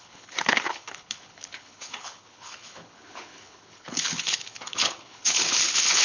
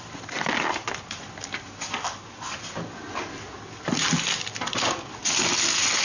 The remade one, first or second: first